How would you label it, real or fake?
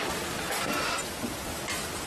real